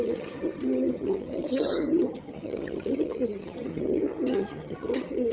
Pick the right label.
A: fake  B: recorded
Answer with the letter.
A